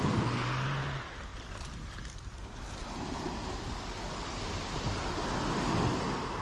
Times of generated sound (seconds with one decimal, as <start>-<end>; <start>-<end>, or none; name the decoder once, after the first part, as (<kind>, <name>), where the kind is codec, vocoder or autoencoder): none